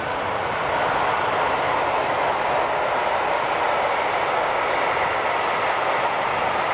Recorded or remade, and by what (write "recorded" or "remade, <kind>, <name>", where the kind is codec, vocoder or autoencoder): recorded